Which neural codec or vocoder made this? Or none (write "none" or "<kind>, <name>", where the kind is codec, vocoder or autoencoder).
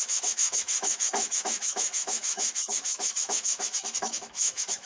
autoencoder, DAC-VAE